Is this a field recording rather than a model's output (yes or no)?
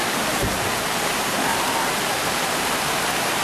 yes